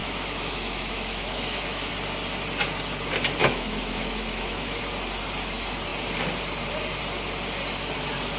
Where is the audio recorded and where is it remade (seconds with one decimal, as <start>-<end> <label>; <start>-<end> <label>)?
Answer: 0.0-1.9 remade; 1.9-3.4 recorded; 3.4-4.8 remade; 4.8-8.4 recorded